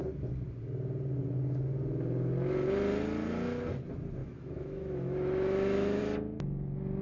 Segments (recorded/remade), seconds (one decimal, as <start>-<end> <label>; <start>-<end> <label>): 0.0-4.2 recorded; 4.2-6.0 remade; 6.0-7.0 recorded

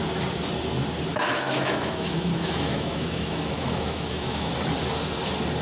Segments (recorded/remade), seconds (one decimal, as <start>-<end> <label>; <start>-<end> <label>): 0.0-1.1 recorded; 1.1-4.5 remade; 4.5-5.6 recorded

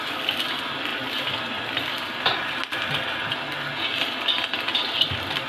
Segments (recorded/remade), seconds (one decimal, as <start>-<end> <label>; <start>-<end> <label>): 0.0-5.5 recorded

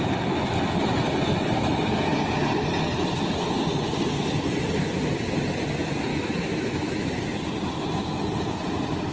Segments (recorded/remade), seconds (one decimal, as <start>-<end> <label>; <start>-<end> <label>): 0.0-6.1 recorded; 6.1-7.1 remade; 7.1-9.1 recorded

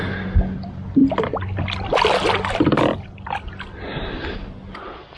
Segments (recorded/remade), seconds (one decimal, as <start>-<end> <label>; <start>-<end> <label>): 0.0-5.2 recorded

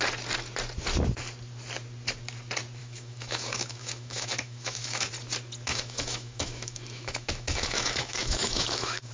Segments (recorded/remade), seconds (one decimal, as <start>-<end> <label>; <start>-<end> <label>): 0.0-2.8 recorded; 2.8-5.1 remade; 5.1-5.7 recorded; 5.7-9.1 remade

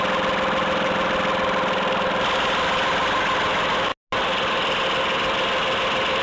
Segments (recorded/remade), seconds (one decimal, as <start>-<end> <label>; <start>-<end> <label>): 0.0-6.2 recorded